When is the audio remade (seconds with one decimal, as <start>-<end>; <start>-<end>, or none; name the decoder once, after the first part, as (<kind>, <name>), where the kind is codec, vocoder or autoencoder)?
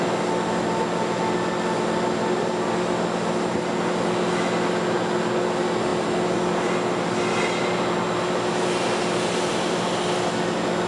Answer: none